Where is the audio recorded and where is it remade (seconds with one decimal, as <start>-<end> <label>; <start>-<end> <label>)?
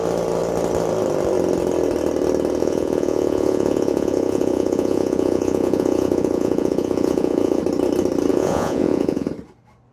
0.0-2.6 recorded; 2.6-7.6 remade; 7.6-8.3 recorded; 8.3-9.3 remade; 9.3-9.9 recorded